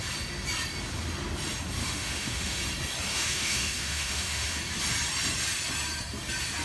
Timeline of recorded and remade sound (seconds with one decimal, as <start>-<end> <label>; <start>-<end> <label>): 0.0-1.8 recorded; 1.8-2.6 remade; 2.6-3.1 recorded; 3.1-4.6 remade; 4.6-6.6 recorded